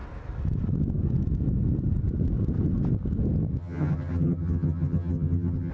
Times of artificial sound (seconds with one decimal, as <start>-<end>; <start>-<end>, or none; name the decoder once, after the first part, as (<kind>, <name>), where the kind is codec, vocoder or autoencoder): 3.6-5.7 (vocoder, HiFi-GAN)